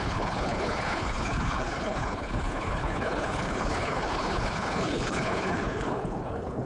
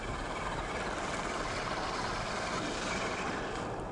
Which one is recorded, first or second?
second